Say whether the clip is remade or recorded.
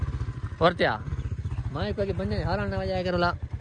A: recorded